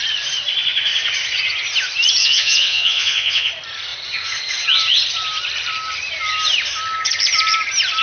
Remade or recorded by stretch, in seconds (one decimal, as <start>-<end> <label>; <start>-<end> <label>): 0.0-2.2 recorded; 2.2-3.5 remade; 3.5-8.0 recorded